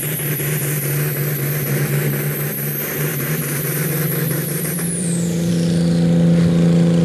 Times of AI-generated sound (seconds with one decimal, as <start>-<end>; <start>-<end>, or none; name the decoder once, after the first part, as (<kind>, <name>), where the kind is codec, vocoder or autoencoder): 3.1-5.5 (vocoder, BigVGAN v2)